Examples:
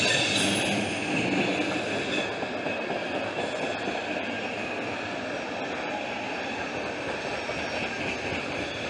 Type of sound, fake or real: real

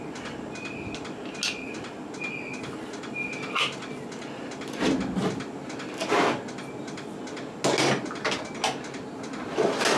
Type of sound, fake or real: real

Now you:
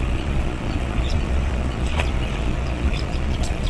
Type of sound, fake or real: fake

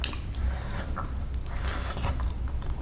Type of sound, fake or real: real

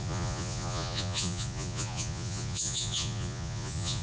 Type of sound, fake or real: fake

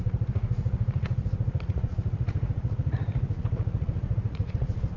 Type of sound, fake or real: fake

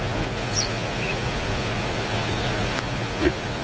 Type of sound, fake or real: fake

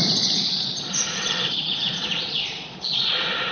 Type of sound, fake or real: fake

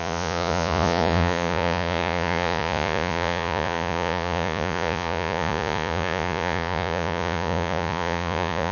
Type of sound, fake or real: fake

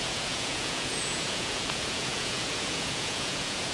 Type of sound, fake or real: fake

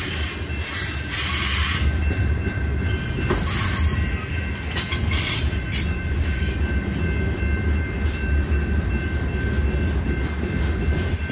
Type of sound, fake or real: real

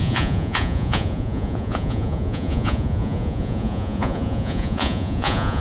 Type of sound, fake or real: fake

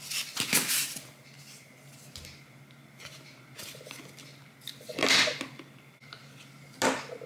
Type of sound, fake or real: real